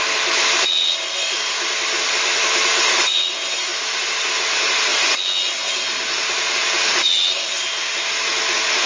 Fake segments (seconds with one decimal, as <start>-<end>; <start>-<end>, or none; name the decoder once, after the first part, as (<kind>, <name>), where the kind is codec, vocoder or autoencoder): 0.0-4.9 (vocoder, BigVGAN v2); 6.1-8.9